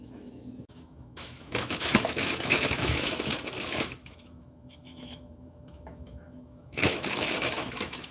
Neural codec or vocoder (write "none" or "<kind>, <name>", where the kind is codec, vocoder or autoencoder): autoencoder, DAC-VAE